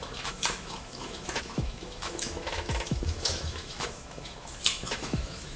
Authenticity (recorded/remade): remade